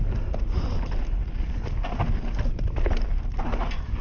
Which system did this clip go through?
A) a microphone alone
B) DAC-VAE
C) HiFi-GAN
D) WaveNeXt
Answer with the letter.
A